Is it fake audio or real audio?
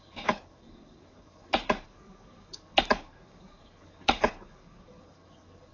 fake